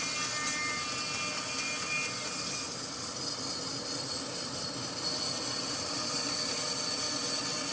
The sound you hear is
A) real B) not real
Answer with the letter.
A